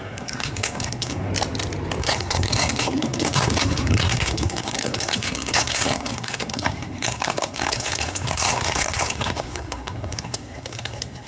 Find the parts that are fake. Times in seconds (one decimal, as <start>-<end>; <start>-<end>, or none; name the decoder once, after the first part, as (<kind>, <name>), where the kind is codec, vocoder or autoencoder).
0.0-1.3 (codec, SNAC); 2.0-11.3